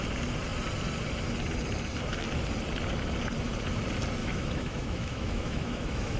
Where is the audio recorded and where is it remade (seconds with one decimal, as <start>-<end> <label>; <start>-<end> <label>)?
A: 0.0-4.2 recorded; 4.2-6.2 remade